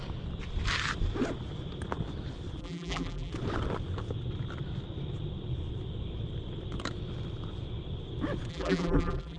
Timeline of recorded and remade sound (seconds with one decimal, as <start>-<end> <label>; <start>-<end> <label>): 0.0-2.6 recorded; 2.6-3.3 remade; 3.3-8.5 recorded; 8.5-9.4 remade